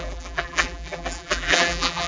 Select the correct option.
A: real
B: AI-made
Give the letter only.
B